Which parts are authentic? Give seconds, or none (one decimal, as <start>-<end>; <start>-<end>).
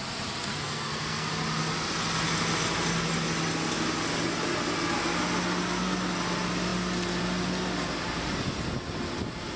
0.0-0.5; 1.3-9.6